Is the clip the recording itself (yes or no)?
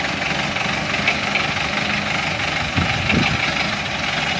yes